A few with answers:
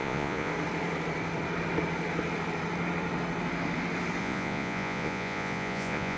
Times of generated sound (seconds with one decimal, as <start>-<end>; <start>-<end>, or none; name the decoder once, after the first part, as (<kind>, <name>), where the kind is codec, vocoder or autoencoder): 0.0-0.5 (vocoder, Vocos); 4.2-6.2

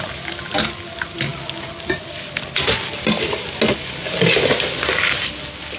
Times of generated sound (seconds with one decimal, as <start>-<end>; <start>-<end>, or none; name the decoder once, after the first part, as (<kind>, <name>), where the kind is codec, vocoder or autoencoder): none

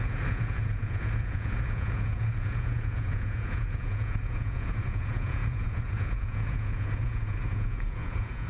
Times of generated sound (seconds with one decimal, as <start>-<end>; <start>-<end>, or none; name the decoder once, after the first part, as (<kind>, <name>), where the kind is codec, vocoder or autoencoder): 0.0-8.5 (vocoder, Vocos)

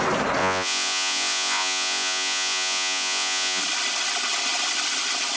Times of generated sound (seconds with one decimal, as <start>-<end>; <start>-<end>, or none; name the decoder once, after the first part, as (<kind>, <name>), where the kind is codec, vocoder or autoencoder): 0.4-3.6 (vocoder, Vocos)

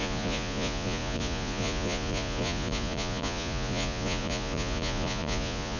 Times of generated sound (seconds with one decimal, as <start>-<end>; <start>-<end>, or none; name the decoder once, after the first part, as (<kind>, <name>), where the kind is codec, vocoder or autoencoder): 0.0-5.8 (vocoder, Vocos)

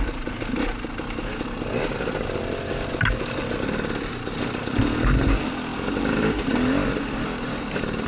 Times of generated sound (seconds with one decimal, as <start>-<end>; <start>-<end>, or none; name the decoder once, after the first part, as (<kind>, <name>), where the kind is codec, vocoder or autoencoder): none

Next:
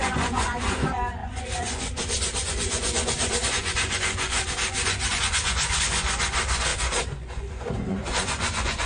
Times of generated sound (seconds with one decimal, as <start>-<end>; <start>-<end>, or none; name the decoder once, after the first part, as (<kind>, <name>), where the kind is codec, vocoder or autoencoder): 0.0-8.9 (vocoder, Vocos)

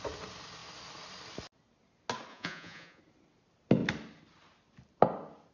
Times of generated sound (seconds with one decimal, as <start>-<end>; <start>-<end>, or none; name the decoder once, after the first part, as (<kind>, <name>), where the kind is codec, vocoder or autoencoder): 2.3-3.0 (vocoder, Vocos)